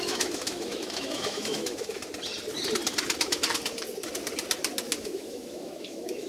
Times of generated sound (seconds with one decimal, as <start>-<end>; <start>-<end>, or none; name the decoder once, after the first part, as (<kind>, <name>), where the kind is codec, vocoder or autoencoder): 0.0-2.0 (autoencoder, DAC-VAE); 5.0-6.3